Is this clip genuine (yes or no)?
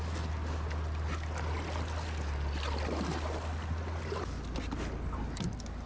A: yes